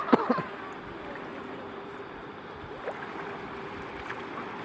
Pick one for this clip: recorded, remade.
recorded